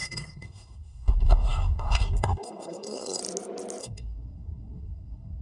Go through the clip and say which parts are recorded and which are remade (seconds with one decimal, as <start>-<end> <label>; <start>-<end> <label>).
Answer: 0.0-3.2 remade; 3.2-3.8 recorded; 3.8-5.4 remade